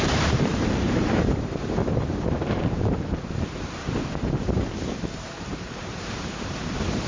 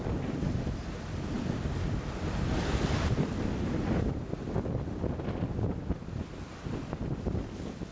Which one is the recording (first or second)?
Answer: second